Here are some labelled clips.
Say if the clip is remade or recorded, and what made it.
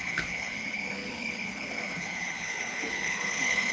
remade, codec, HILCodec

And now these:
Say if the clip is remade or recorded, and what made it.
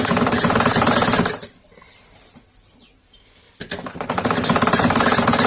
recorded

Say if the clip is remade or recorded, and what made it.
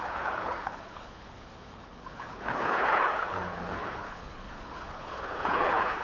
remade, codec, HILCodec